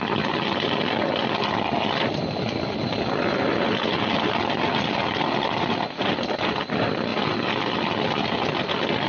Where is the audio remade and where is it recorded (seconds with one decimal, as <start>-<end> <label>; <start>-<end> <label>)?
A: 0.0-9.1 recorded